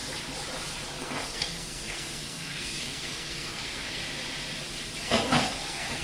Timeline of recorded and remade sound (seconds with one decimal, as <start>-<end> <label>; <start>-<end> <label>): 0.0-1.0 recorded; 1.0-4.0 remade; 4.0-5.0 recorded; 5.0-6.0 remade